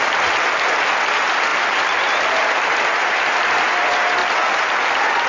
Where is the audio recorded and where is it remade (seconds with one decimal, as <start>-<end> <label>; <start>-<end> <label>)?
0.0-5.3 recorded